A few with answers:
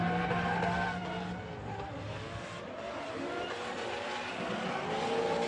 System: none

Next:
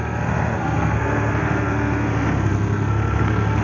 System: codec, SNAC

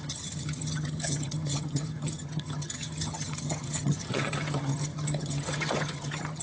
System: vocoder, HiFi-GAN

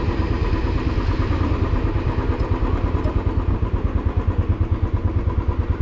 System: none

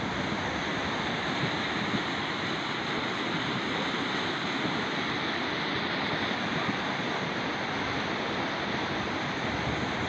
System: none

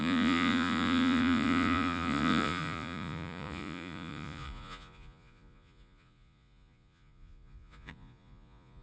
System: vocoder, Vocos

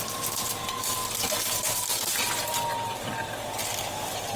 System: none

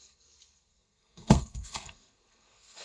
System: codec, SNAC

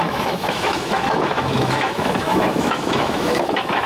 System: autoencoder, DAC-VAE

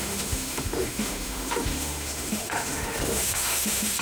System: autoencoder, DAC-VAE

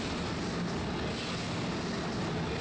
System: none